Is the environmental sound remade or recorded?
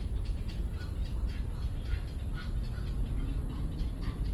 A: recorded